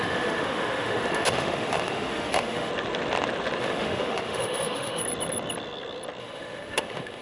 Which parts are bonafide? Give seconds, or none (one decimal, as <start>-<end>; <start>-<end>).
2.7-3.6; 5.0-6.2